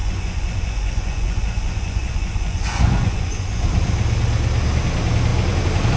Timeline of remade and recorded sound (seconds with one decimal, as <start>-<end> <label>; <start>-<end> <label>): 0.0-3.6 remade; 3.6-6.0 recorded